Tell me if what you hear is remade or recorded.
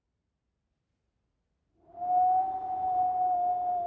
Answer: recorded